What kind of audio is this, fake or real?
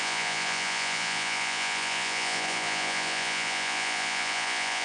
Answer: fake